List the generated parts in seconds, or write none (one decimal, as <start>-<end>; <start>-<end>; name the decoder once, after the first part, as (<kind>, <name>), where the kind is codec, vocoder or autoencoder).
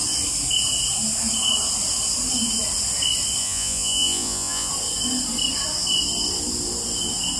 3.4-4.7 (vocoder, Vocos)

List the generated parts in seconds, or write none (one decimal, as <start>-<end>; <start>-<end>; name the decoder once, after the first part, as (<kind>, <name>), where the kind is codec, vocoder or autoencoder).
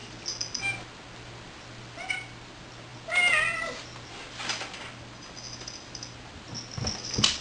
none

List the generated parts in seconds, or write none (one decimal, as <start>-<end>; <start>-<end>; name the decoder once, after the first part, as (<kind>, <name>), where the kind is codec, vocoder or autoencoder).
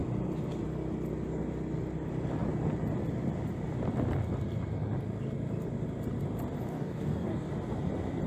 6.7-7.5 (codec, DAC)